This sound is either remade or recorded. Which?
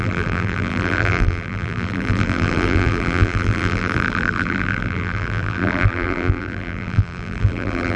remade